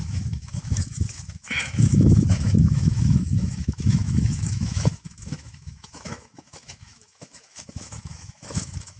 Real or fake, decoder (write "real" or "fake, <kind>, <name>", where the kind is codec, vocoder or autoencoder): fake, autoencoder, DAC-VAE